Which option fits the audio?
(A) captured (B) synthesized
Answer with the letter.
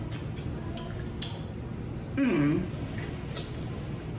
A